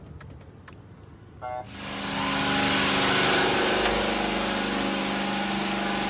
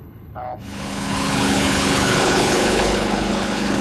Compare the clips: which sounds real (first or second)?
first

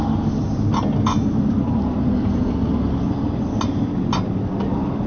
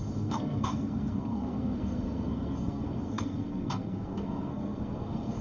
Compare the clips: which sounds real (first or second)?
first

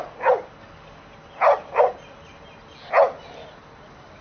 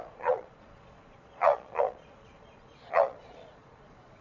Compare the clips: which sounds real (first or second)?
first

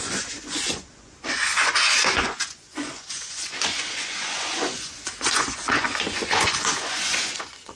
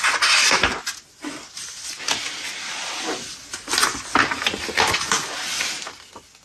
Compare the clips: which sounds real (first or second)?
second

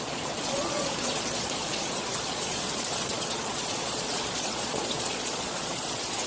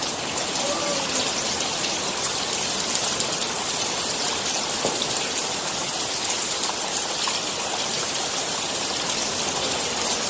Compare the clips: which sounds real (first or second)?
second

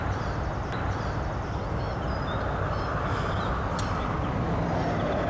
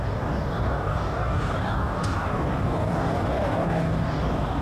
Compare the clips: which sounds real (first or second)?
first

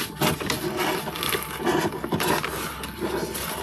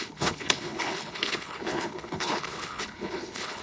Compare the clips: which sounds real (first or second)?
first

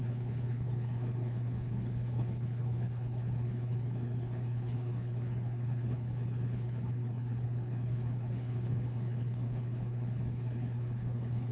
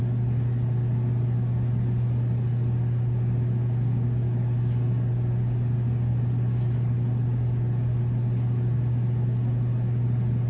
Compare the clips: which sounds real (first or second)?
second